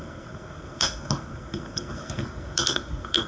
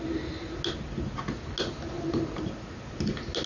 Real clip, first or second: second